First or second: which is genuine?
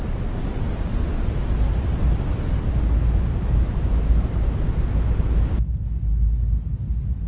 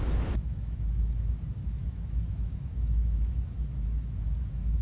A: first